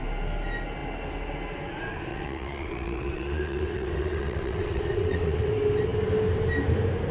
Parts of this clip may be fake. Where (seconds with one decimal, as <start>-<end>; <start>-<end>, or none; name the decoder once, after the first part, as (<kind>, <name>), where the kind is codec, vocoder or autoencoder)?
2.1-5.5 (vocoder, WaveNeXt)

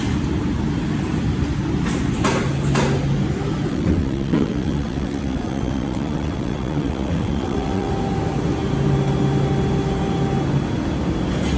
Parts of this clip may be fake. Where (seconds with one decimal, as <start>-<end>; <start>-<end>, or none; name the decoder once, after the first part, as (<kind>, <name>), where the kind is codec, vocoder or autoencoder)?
3.7-7.9 (vocoder, WaveNeXt)

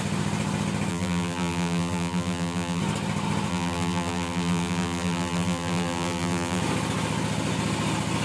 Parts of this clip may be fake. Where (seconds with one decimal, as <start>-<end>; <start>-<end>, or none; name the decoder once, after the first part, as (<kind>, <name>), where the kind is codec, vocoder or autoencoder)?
0.9-2.8 (vocoder, BigVGAN v2); 3.5-6.6

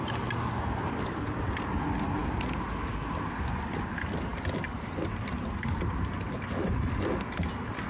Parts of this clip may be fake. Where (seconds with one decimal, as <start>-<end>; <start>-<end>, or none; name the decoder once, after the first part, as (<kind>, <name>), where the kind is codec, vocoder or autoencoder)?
none